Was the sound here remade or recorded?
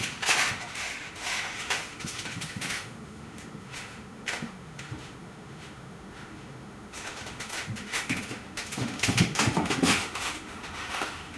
remade